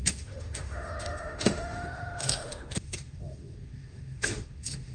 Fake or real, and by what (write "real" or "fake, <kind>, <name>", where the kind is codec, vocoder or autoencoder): fake, autoencoder, DAC-VAE